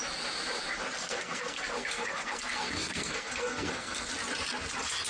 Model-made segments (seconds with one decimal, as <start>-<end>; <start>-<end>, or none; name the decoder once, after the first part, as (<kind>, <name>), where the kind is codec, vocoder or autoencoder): 1.0-4.1 (codec, SNAC)